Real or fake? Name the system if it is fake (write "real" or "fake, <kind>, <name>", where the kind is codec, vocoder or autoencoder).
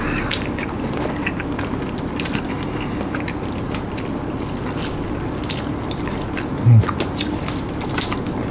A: real